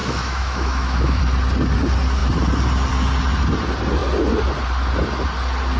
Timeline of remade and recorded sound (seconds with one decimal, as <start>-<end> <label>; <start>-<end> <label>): 0.0-1.2 remade; 1.2-5.8 recorded